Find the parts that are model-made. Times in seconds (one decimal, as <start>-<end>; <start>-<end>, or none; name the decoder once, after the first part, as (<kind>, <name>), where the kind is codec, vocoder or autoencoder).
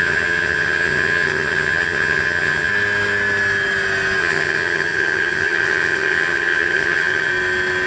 0.0-2.7 (vocoder, HiFi-GAN); 4.2-7.3